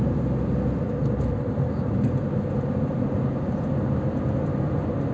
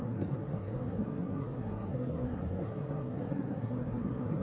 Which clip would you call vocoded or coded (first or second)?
second